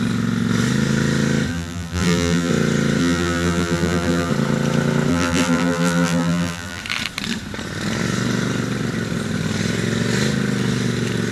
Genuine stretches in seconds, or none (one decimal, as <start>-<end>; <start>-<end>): 0.0-1.5; 2.5-3.0; 4.3-5.1; 6.8-11.3